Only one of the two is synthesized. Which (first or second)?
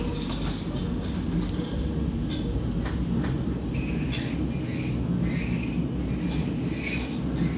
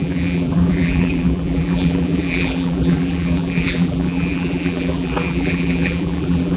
second